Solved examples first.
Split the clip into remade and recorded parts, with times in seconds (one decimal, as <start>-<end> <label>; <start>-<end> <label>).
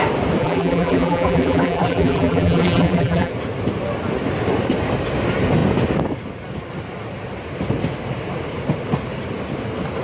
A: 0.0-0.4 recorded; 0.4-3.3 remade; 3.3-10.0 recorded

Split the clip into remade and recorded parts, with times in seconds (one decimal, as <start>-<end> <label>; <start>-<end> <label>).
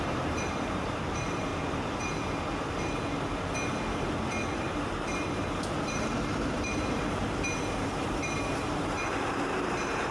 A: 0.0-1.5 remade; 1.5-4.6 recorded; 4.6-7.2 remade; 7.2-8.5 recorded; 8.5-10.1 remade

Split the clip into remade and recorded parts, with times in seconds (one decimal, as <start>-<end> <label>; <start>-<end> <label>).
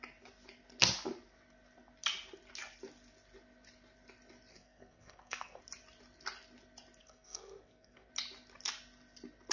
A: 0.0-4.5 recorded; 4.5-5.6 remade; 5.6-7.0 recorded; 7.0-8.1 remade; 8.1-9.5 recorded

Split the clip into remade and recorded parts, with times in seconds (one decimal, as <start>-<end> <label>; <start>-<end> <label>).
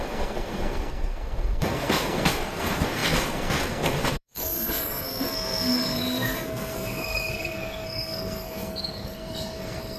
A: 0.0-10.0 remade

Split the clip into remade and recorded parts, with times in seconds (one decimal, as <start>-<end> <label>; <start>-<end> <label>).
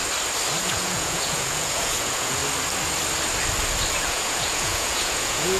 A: 0.0-0.6 recorded; 0.6-2.4 remade; 2.4-3.9 recorded; 3.9-5.6 remade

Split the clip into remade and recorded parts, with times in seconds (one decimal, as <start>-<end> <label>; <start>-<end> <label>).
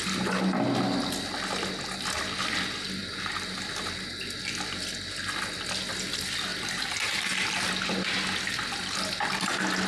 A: 0.0-3.0 recorded; 3.0-3.7 remade; 3.7-6.5 recorded; 6.5-7.7 remade; 7.7-9.9 recorded